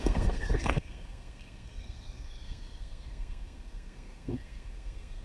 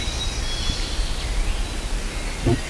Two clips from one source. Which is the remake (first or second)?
first